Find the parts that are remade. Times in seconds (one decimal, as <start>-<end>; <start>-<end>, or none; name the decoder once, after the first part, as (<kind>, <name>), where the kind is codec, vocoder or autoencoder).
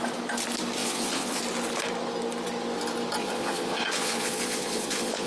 0.8-1.4 (vocoder, Vocos); 3.2-5.3